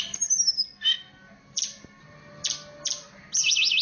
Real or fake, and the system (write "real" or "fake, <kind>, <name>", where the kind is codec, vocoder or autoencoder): real